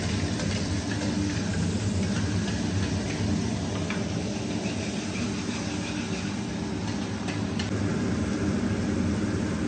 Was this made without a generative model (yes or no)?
yes